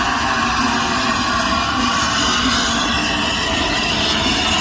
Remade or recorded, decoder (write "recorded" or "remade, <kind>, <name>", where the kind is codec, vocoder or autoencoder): recorded